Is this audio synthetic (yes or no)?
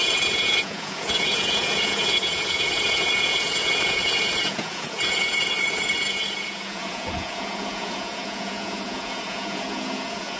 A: yes